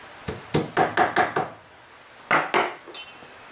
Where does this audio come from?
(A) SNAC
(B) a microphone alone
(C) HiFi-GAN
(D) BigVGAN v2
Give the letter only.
B